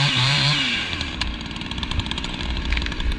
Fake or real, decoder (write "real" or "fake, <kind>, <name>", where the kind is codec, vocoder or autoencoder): fake, vocoder, BigVGAN v2